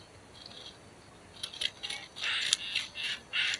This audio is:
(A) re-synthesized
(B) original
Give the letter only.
B